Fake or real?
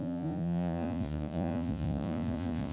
fake